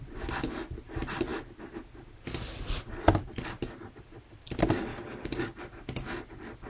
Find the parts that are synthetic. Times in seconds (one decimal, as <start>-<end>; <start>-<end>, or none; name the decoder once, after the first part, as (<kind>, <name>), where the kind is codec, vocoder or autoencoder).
4.9-5.6 (codec, DAC)